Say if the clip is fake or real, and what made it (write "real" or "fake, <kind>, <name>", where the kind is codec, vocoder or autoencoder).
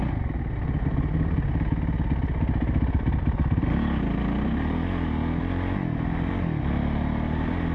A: real